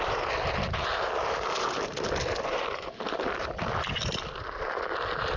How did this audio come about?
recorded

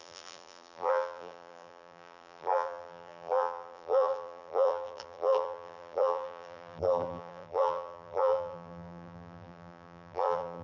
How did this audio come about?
remade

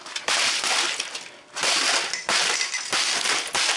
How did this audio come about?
recorded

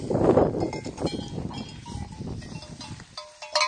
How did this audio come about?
recorded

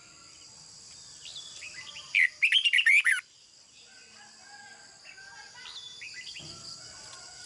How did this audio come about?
recorded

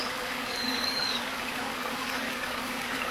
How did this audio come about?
remade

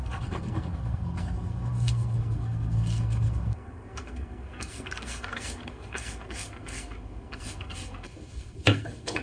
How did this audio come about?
remade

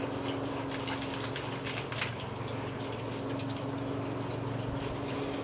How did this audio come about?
recorded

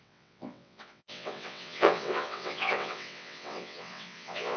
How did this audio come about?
remade